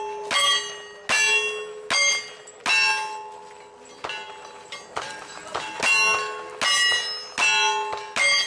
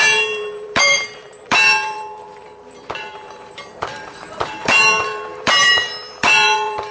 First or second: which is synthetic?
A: second